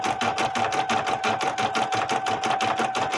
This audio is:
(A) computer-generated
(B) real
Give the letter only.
B